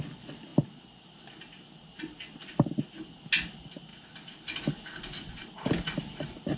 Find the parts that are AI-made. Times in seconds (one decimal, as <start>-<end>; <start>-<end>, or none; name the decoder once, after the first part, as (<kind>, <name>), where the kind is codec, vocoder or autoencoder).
none